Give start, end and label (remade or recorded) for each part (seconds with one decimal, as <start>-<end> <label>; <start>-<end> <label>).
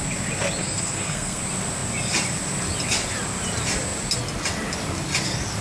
0.0-0.6 recorded; 0.6-1.4 remade; 1.4-5.6 recorded